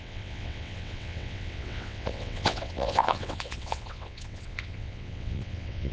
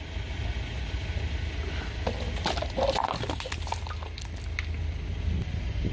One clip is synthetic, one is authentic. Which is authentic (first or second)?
second